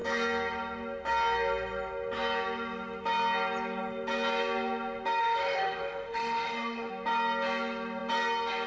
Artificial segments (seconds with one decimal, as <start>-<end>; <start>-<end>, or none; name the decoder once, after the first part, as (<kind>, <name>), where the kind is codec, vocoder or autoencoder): 5.2-6.9 (autoencoder, DAC-VAE)